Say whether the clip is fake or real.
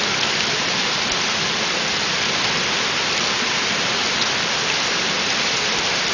real